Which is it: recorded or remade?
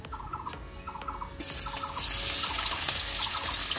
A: recorded